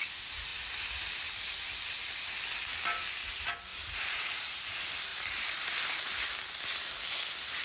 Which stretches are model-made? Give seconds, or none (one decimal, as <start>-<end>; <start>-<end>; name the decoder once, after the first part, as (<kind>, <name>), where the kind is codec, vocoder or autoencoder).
3.7-4.6 (vocoder, BigVGAN v2); 5.1-6.1